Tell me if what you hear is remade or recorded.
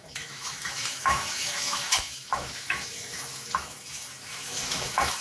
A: remade